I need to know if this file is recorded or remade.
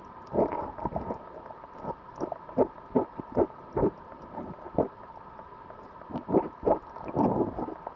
remade